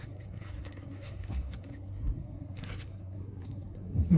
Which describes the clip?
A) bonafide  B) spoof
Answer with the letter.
B